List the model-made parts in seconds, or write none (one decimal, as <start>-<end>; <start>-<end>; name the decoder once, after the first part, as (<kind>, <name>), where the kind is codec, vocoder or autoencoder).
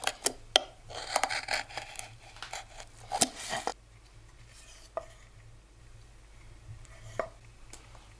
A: none